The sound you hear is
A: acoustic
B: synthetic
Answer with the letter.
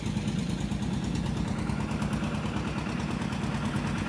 A